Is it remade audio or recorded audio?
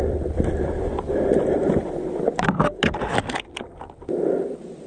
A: remade